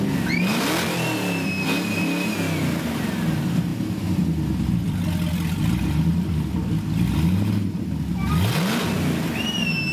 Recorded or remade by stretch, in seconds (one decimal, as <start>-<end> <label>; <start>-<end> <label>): 0.0-9.9 recorded